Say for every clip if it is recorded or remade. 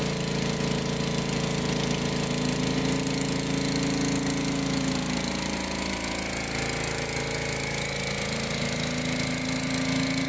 recorded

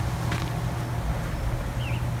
recorded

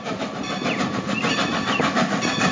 recorded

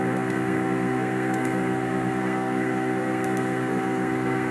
remade